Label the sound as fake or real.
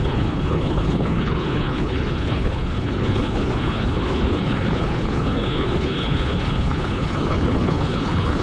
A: fake